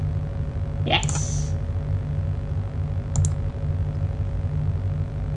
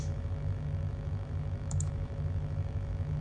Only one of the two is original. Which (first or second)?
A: first